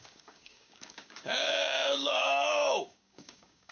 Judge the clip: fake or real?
fake